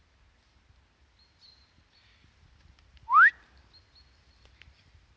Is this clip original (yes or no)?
yes